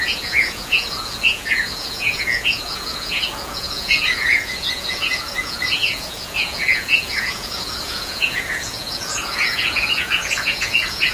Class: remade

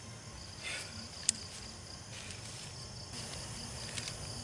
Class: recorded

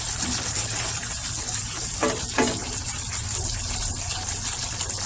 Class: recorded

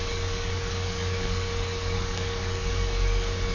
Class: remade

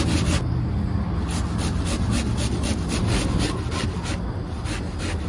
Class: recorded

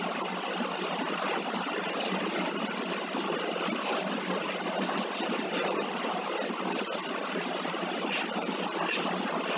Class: recorded